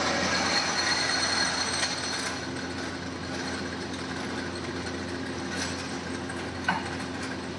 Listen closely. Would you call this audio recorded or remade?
recorded